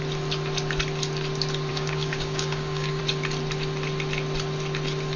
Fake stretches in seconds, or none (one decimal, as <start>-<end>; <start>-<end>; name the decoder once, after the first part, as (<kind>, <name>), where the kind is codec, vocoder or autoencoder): 1.7-3.0 (codec, DAC)